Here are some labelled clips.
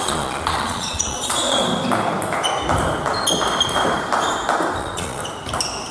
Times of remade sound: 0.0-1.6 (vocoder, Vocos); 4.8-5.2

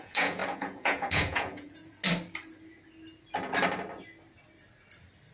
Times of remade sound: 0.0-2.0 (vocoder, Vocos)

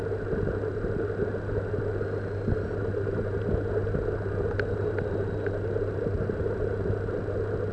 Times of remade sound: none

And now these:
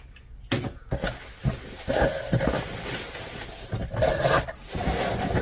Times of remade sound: none

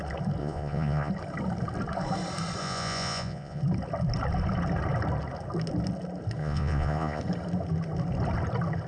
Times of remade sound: 0.4-1.1 (vocoder, Vocos); 2.6-3.6; 6.4-7.2

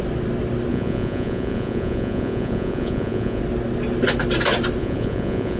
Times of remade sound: 0.7-3.4 (vocoder, Vocos); 4.8-5.6